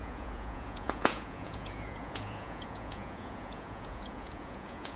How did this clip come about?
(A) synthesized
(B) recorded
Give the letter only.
A